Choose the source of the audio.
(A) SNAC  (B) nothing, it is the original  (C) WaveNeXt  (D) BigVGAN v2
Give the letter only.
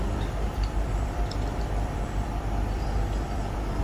D